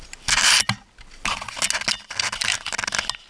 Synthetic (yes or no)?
no